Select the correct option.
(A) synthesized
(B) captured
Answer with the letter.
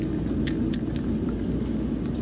B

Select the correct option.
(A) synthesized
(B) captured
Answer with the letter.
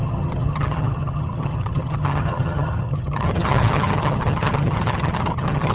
A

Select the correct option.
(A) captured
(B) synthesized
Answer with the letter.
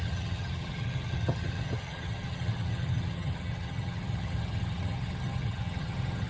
B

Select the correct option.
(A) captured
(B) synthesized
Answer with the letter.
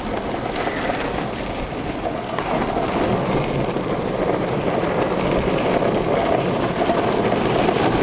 A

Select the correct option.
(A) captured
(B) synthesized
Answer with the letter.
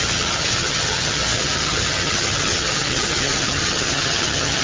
B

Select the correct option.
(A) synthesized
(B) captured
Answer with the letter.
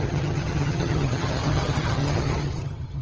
A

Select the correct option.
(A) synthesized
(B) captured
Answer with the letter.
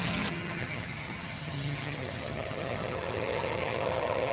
A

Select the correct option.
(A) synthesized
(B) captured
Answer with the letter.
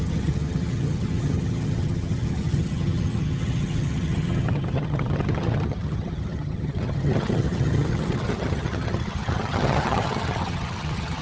A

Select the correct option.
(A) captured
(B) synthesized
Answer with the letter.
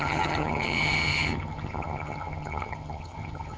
B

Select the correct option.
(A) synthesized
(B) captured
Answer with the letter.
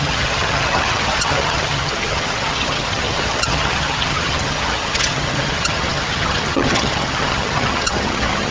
A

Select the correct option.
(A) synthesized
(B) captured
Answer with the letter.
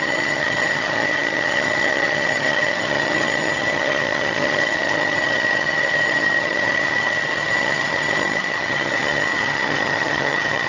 A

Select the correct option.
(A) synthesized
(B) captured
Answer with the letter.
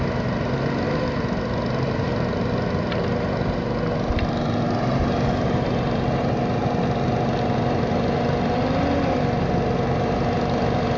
B